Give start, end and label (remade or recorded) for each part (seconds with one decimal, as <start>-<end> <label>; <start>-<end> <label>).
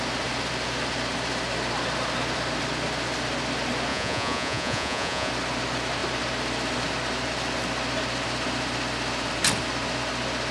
0.0-3.9 recorded; 3.9-5.3 remade; 5.3-10.5 recorded